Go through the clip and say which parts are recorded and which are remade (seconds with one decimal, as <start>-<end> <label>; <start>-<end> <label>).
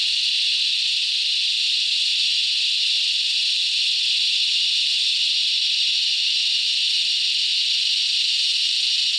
0.0-9.2 recorded